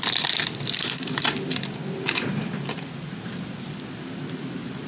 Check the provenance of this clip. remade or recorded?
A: recorded